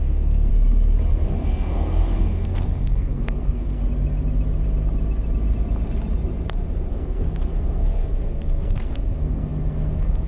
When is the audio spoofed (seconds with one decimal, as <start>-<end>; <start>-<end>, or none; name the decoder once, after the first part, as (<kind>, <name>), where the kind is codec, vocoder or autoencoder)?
0.0-0.5 (codec, SNAC); 1.1-3.8; 6.9-10.3